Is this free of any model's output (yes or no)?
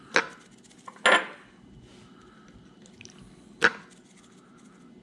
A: yes